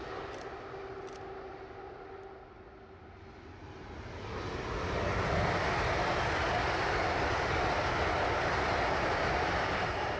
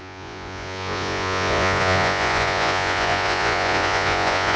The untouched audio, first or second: first